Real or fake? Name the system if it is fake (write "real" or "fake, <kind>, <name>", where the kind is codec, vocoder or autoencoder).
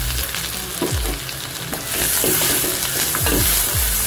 real